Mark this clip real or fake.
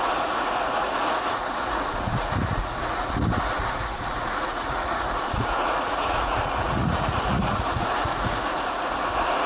fake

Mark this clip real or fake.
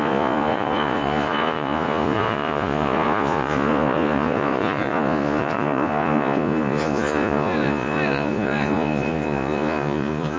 fake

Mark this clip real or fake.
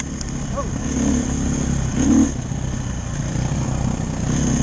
real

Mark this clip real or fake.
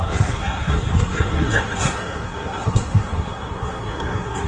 fake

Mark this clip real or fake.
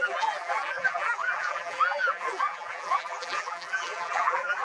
fake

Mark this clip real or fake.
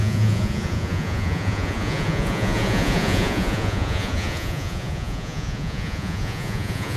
fake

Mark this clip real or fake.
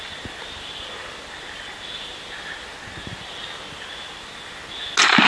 real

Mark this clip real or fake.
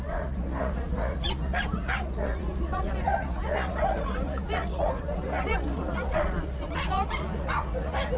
fake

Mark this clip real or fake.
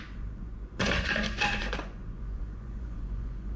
fake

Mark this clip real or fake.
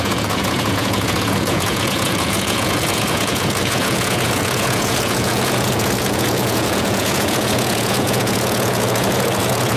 fake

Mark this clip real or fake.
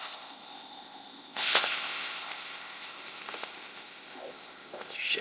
fake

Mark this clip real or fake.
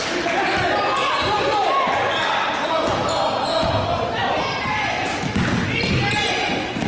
real